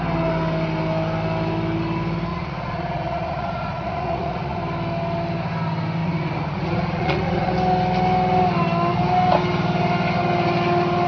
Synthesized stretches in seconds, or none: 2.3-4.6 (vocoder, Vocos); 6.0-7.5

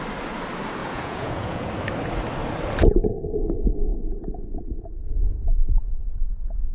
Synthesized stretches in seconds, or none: 0.8-1.7 (vocoder, Vocos)